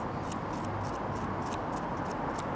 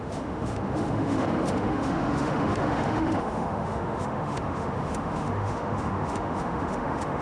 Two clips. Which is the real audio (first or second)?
first